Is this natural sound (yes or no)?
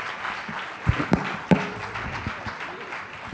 yes